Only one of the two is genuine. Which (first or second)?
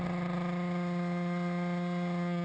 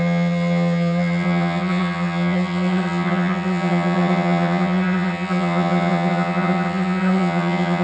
first